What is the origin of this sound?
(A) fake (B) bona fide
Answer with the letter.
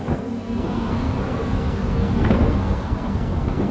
A